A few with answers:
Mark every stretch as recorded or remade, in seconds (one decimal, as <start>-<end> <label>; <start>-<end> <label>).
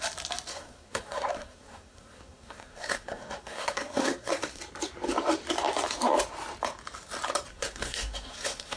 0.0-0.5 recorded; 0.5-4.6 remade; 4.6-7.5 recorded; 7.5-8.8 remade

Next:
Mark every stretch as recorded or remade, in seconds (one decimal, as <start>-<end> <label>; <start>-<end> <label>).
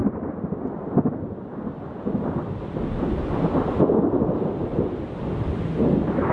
0.0-6.3 recorded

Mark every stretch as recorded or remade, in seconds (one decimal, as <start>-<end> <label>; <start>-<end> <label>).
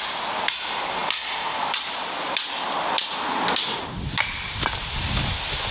0.0-5.7 recorded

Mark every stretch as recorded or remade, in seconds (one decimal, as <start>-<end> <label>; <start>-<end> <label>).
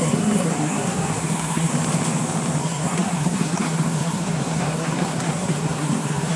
0.0-1.7 remade; 1.7-2.6 recorded; 2.6-6.4 remade